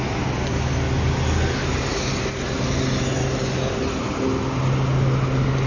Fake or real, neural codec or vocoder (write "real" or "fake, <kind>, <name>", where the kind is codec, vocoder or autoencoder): real